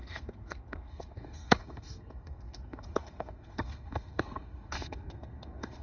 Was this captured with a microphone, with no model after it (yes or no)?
no